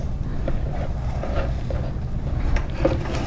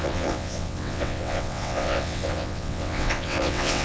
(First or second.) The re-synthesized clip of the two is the second